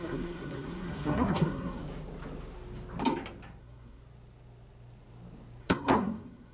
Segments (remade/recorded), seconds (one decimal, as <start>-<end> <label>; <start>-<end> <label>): 0.0-1.8 remade; 1.8-3.6 recorded; 3.6-4.0 remade; 4.0-5.6 recorded; 5.6-6.5 remade